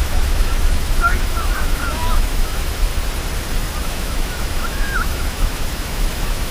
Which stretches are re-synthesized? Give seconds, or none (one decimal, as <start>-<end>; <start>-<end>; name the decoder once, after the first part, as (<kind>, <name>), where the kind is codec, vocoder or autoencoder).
0.0-2.9 (autoencoder, DAC-VAE); 3.8-6.5